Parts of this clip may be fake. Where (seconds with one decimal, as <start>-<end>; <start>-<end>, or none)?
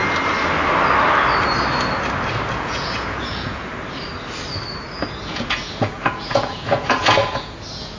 2.5-3.7; 5.3-8.0